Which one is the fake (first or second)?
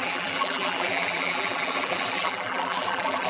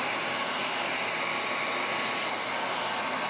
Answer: first